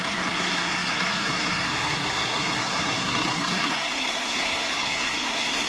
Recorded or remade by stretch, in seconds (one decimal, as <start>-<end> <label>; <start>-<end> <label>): 0.0-5.7 remade